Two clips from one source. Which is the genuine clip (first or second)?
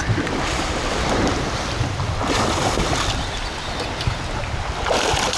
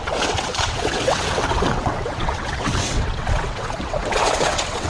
first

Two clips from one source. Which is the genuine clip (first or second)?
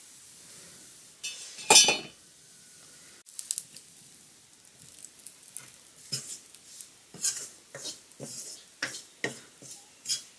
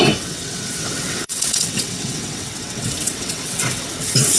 first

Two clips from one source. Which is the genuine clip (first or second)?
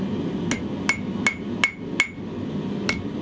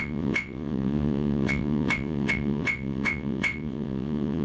first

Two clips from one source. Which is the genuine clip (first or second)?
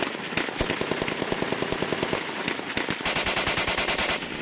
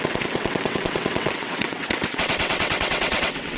first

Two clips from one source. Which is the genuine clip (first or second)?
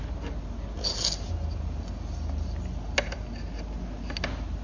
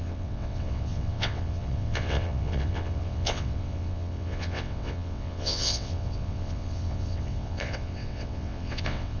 first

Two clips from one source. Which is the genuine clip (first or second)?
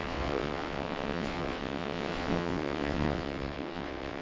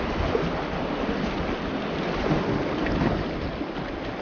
second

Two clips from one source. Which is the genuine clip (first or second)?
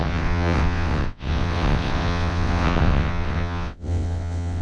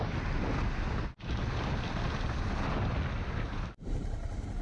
second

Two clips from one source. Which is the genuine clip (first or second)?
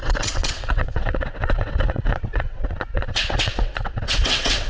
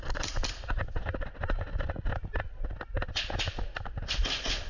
second